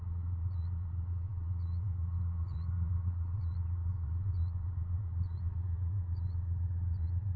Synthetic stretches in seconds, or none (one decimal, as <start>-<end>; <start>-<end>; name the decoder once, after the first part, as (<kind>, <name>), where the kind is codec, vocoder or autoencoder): 0.0-7.4 (vocoder, Vocos)